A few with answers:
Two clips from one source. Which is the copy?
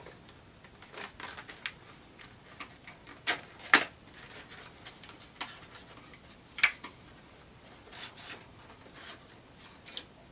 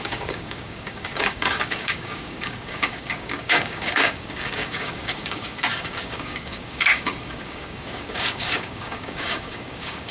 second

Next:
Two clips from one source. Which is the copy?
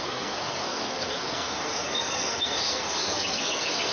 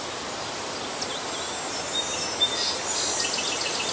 first